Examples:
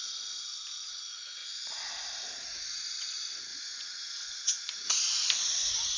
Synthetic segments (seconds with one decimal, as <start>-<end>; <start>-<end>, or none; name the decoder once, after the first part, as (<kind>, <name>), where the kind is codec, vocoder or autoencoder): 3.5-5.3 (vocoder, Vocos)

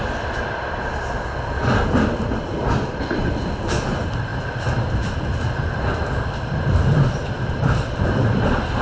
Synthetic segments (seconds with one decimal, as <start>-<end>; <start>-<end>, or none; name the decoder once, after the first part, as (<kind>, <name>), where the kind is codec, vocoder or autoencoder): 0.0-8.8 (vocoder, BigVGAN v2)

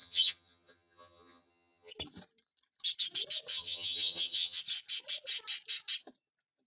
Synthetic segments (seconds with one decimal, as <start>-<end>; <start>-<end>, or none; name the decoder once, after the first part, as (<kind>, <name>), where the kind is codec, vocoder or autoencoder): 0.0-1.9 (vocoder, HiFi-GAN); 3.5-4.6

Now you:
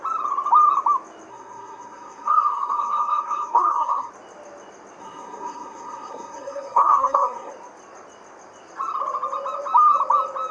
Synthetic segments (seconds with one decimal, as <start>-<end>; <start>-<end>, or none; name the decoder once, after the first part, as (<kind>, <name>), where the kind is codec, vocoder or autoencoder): 1.3-4.1 (codec, SNAC); 5.0-7.5